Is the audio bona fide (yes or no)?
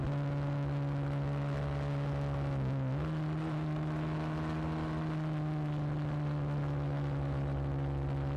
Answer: yes